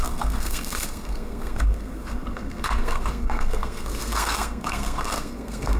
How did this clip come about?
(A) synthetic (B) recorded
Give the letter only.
A